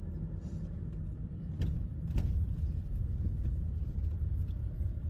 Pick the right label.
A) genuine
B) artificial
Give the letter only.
A